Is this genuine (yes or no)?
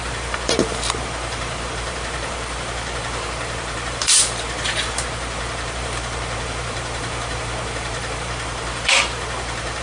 no